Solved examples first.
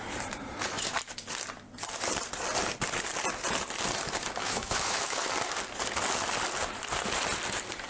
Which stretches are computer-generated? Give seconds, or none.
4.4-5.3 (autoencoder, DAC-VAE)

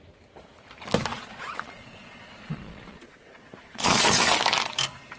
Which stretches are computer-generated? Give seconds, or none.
1.1-4.2 (vocoder, Vocos)